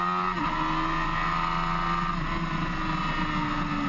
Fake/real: real